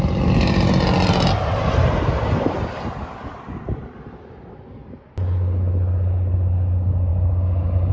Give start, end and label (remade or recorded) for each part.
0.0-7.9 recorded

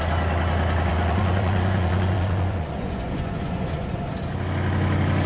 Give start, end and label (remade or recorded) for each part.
0.0-0.9 recorded; 0.9-4.1 remade; 4.1-5.3 recorded